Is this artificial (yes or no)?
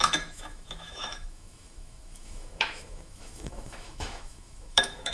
yes